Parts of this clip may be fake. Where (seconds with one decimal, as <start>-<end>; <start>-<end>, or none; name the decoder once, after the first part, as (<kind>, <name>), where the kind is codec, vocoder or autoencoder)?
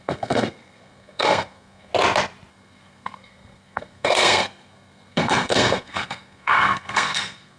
0.0-1.9 (codec, SNAC); 2.5-7.6